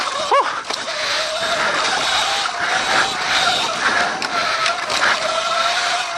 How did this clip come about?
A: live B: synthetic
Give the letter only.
A